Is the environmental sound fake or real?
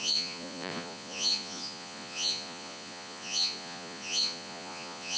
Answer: fake